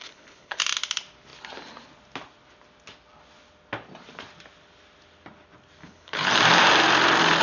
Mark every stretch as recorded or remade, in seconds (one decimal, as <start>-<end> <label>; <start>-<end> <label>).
0.0-0.6 remade; 0.6-5.8 recorded; 5.8-6.3 remade; 6.3-7.4 recorded